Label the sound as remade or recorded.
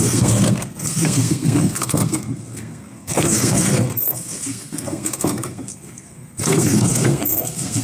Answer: remade